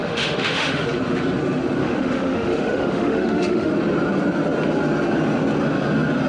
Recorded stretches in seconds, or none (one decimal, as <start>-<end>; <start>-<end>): 0.8-1.8; 3.7-6.3